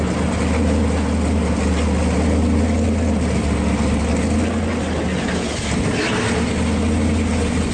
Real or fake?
real